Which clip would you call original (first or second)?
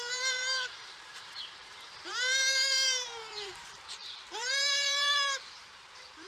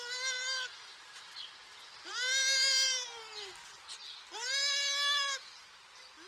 second